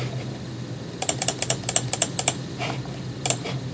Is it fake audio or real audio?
real